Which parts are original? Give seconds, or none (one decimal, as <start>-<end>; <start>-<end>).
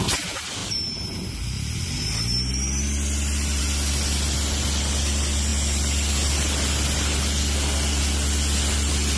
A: 0.0-9.2